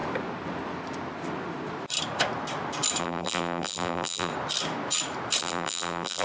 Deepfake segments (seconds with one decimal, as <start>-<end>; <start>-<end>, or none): 3.0-4.3; 5.4-6.2